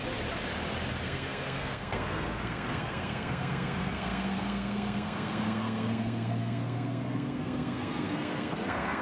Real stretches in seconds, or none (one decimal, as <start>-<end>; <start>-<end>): 0.0-1.0